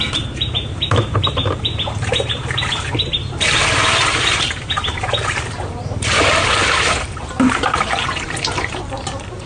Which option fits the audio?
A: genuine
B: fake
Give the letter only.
B